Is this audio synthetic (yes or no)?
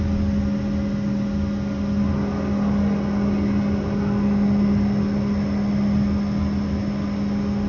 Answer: no